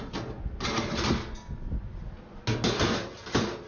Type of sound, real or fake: real